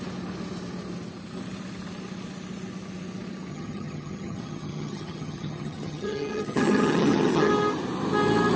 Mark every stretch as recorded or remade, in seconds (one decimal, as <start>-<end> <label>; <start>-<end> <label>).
0.0-3.5 recorded; 3.5-7.5 remade; 7.5-8.6 recorded

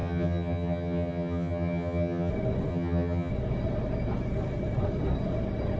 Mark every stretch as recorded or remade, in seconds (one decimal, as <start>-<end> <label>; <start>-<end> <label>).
0.0-2.3 remade; 2.3-2.7 recorded; 2.7-3.3 remade; 3.3-5.8 recorded

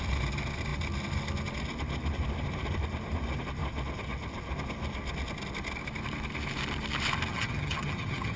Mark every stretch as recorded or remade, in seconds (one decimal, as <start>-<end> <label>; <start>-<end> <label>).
0.0-7.3 recorded; 7.3-8.4 remade

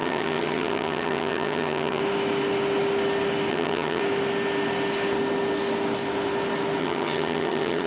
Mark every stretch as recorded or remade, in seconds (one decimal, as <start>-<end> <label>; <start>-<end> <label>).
0.0-2.0 remade; 2.0-3.5 recorded; 3.5-4.0 remade; 4.0-6.8 recorded; 6.8-7.9 remade

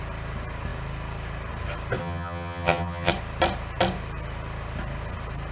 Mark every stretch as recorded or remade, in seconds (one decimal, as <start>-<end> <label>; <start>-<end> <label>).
0.0-2.0 recorded; 2.0-3.1 remade; 3.1-5.5 recorded

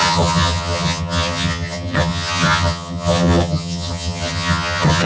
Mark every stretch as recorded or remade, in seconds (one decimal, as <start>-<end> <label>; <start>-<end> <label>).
0.0-5.1 remade